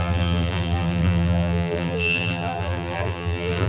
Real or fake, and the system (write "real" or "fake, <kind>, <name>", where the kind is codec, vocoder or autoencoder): fake, vocoder, BigVGAN v2